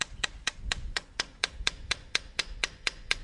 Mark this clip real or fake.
fake